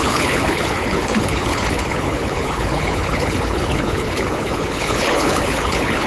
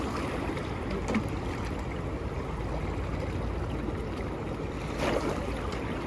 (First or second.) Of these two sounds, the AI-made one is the first